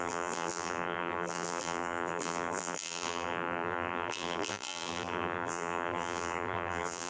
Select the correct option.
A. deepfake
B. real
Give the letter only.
A